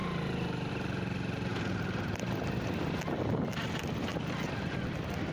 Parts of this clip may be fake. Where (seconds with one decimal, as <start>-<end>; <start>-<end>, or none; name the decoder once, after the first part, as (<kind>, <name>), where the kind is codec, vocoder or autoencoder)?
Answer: none